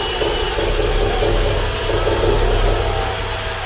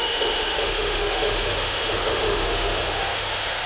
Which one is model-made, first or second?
second